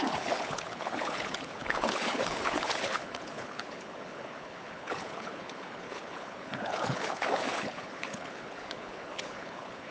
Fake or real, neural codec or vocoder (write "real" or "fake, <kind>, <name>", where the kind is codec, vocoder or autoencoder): fake, codec, HILCodec